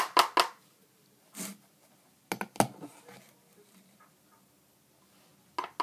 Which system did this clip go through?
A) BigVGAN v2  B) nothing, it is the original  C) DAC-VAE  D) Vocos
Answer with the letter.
B